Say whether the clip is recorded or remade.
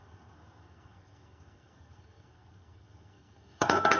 remade